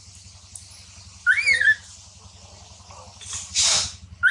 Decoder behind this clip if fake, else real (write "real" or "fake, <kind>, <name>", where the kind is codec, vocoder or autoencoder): real